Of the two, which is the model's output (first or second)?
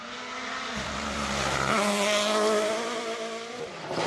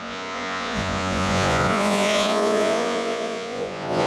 second